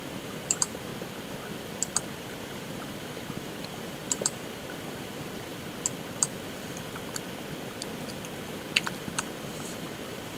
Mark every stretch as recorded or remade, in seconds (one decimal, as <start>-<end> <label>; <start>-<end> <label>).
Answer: 0.0-0.9 remade; 0.9-2.0 recorded; 2.0-5.5 remade; 5.5-9.0 recorded; 9.0-10.4 remade